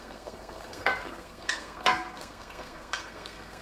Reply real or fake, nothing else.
fake